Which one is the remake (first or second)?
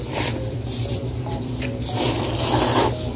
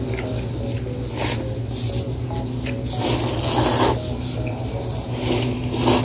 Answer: first